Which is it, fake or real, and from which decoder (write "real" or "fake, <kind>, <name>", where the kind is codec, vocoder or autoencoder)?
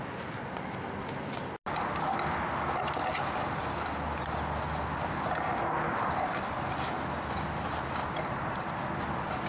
real